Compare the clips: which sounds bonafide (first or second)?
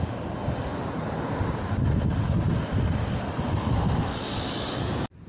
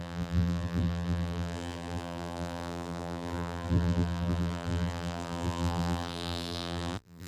first